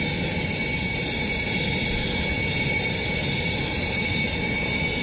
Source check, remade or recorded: recorded